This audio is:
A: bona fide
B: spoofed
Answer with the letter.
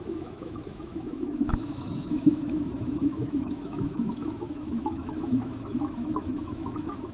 B